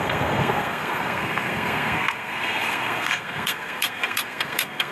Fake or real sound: fake